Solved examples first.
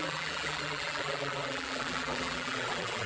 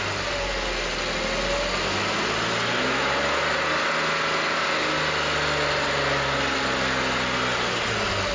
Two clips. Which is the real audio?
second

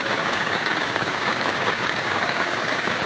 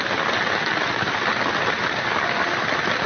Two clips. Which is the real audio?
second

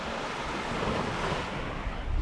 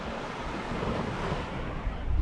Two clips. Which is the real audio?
first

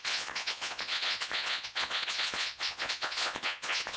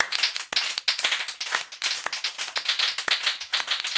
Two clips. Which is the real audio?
second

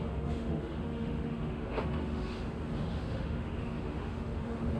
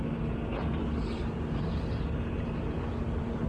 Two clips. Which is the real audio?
second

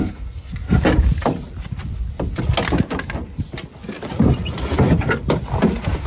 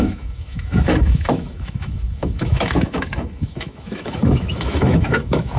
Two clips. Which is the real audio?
first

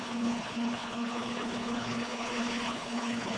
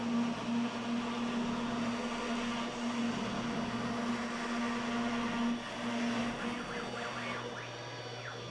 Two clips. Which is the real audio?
second